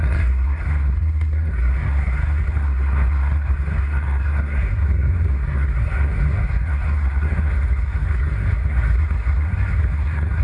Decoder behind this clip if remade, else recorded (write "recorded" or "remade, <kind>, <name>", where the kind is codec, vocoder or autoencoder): remade, codec, SNAC